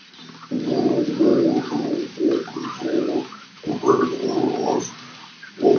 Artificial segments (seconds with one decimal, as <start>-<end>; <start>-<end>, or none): 1.3-4.8